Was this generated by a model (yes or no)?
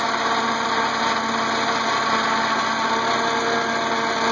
no